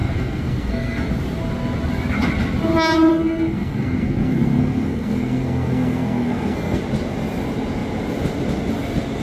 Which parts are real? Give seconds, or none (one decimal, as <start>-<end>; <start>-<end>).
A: 1.1-3.1; 6.8-9.2